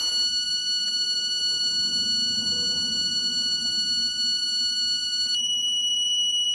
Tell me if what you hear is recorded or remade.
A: remade